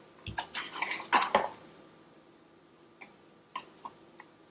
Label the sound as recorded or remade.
recorded